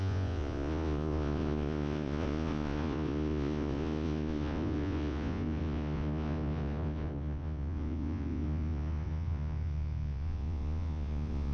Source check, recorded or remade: remade